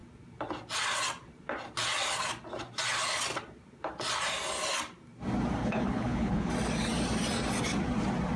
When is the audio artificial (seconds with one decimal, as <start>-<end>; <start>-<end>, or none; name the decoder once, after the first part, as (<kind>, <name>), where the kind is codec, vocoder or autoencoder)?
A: 5.6-6.5 (codec, HILCodec)